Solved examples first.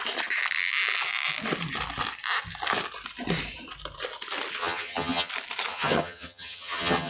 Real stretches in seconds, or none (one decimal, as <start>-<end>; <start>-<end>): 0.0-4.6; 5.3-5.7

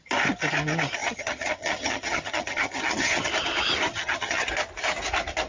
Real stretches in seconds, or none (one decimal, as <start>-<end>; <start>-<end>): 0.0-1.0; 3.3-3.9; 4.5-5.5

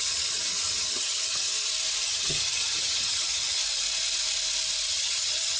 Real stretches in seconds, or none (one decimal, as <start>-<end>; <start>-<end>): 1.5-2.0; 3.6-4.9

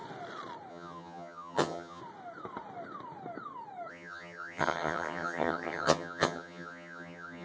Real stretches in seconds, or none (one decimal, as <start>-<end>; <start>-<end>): 0.0-0.7; 2.0-3.9

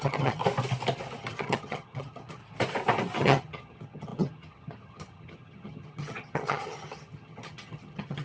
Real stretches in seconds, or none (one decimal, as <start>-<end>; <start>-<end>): 0.4-1.2; 2.4-3.2